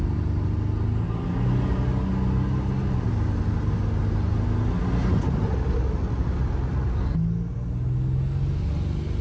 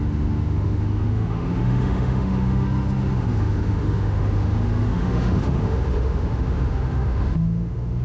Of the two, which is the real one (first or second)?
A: first